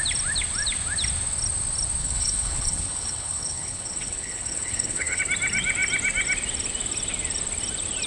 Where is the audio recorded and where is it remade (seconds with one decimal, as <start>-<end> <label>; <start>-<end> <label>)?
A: 0.0-2.0 recorded; 2.0-5.2 remade; 5.2-8.1 recorded